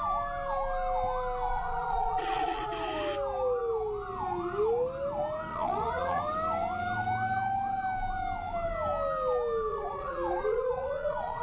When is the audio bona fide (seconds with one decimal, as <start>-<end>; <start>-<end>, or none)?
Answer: 0.0-1.5; 2.7-5.5; 6.2-9.7